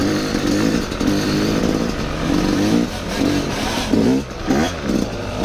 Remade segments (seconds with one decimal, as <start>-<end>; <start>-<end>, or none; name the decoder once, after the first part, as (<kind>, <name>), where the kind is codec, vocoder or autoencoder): none